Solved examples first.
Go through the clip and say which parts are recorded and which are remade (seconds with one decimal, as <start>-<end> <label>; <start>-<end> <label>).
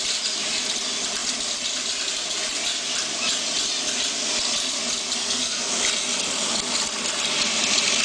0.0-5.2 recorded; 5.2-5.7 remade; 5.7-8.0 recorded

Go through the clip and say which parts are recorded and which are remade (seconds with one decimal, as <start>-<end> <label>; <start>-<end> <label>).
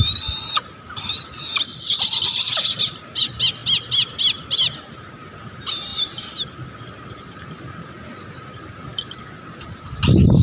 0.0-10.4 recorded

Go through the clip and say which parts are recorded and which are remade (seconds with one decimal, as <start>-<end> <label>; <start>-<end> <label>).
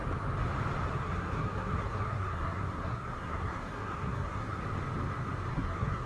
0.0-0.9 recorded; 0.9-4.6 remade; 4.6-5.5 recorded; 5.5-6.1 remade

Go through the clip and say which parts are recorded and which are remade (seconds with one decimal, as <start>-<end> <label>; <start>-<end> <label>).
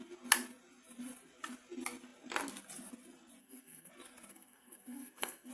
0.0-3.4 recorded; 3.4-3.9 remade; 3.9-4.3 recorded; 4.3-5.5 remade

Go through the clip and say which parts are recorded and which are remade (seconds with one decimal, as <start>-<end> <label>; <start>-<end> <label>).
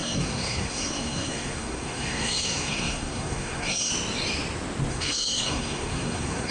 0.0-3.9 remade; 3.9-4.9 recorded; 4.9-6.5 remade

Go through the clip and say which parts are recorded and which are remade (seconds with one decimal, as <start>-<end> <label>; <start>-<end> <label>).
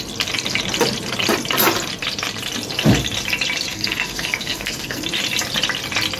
0.0-3.7 recorded; 3.7-5.0 remade; 5.0-6.2 recorded